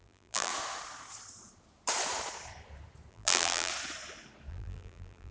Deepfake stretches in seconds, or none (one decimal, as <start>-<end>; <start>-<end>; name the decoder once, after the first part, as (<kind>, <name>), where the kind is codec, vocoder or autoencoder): 0.0-0.5 (vocoder, BigVGAN v2); 3.1-3.7; 4.5-5.3

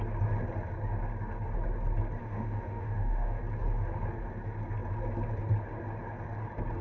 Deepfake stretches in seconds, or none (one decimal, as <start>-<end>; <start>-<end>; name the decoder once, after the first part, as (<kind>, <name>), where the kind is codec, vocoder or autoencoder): 2.2-3.4 (autoencoder, DAC-VAE)

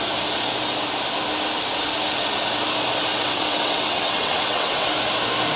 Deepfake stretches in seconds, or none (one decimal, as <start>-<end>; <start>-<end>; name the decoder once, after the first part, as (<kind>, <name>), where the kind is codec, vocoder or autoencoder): 3.1-4.9 (vocoder, WaveNeXt)

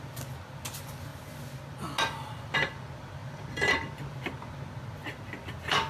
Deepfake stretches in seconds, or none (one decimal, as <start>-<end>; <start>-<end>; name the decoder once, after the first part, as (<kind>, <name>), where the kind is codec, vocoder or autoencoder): none